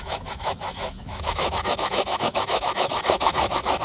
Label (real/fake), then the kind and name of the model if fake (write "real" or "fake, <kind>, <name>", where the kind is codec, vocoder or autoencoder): fake, autoencoder, DAC-VAE